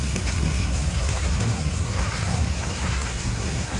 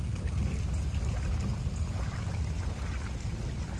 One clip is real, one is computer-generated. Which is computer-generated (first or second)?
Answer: first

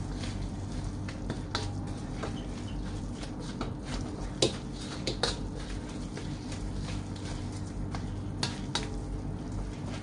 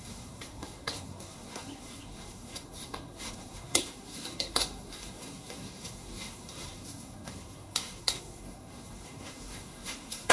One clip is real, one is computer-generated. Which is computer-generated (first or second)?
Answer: second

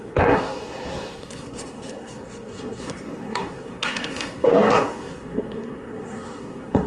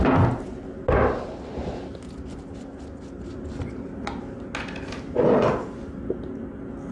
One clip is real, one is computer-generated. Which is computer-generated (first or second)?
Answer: first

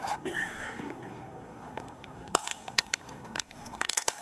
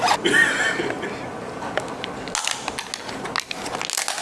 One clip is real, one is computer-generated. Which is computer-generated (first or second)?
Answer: first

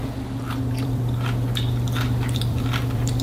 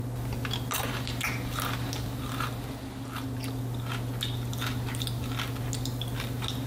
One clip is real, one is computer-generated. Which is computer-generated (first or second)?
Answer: first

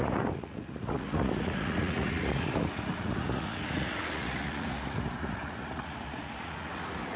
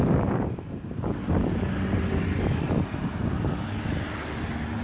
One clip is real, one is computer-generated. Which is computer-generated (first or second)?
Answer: first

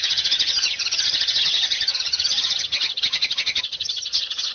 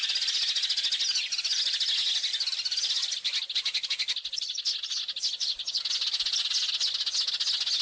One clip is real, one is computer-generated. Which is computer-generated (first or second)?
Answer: first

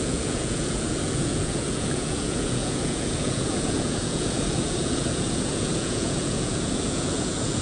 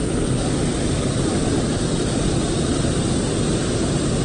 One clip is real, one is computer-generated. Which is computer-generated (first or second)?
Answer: first